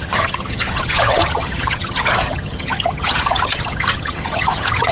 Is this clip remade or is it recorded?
remade